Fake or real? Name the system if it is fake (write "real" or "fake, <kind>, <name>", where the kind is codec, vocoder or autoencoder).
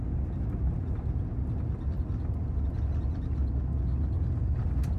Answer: real